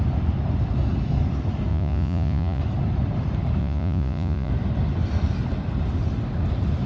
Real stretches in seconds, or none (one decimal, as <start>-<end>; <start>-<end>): 0.0-1.7; 2.6-3.6; 4.5-6.9

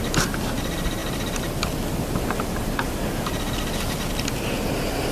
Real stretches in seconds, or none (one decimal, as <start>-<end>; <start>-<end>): 0.0-5.1

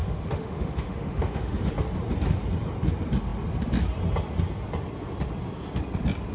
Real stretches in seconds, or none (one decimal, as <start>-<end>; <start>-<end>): 1.7-6.3

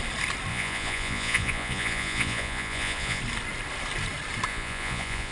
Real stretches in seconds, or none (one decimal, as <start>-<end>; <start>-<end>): 0.0-0.5; 3.2-4.5

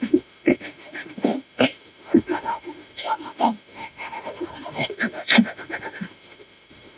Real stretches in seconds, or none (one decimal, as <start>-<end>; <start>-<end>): none

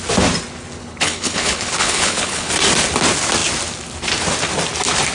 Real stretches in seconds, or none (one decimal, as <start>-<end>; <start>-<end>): 0.0-0.8; 2.5-5.1